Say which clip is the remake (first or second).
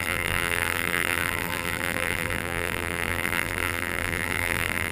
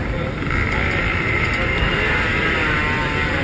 first